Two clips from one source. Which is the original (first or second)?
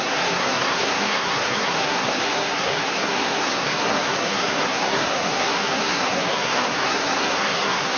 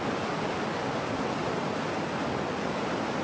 second